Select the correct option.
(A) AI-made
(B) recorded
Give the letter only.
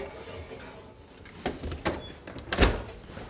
B